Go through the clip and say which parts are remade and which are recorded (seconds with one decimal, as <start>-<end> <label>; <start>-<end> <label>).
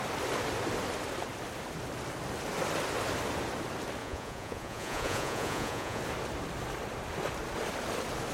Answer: 0.0-4.0 recorded; 4.0-6.0 remade; 6.0-8.3 recorded